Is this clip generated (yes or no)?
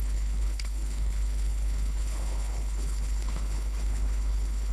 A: yes